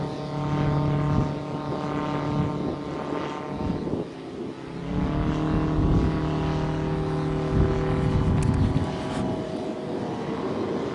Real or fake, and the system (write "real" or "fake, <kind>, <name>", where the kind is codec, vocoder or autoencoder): real